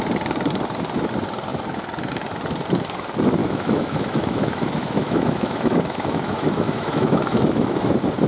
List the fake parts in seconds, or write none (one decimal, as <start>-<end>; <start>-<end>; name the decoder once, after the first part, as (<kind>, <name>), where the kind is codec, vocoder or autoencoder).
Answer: 3.4-7.9 (autoencoder, DAC-VAE)